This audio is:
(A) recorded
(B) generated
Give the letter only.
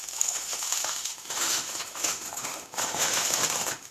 B